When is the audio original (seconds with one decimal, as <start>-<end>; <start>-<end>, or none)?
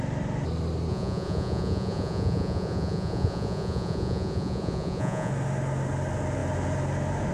0.0-0.9; 5.3-7.3